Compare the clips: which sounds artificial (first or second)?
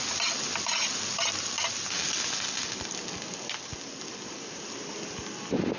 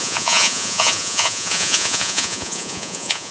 second